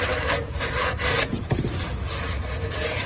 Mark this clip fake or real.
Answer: real